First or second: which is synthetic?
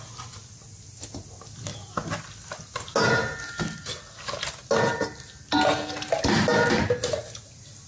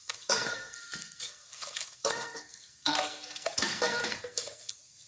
second